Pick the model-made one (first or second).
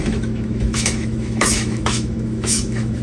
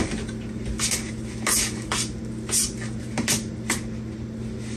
first